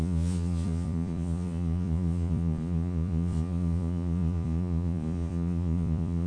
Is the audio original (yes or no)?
no